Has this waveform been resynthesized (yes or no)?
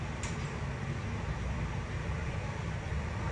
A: no